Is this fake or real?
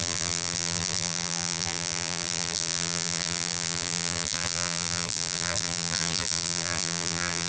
fake